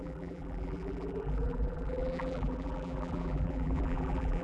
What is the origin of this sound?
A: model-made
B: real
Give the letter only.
A